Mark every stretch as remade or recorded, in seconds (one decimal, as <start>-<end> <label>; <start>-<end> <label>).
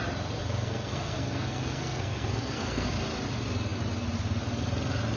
0.0-0.4 recorded; 0.4-2.9 remade; 2.9-5.2 recorded